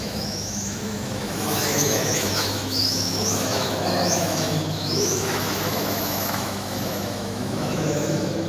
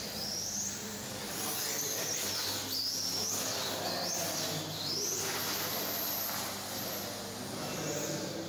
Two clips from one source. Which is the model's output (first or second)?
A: first